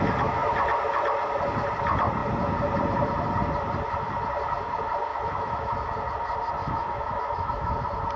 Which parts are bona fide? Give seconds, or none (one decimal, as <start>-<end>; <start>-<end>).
0.0-5.1; 5.7-6.6; 7.7-8.2